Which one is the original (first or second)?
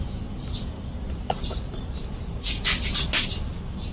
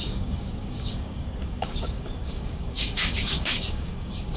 first